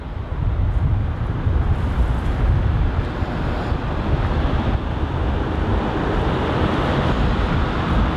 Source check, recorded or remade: recorded